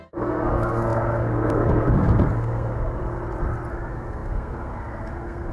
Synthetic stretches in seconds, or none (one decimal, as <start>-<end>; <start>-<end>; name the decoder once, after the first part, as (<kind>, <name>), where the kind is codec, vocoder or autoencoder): 0.0-3.0 (codec, SNAC); 3.7-5.5